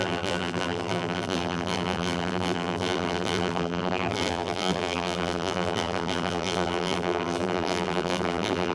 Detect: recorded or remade remade